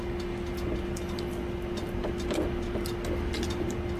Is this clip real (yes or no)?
yes